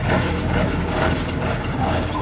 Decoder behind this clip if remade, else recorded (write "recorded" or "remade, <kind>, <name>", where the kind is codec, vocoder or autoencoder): remade, codec, DAC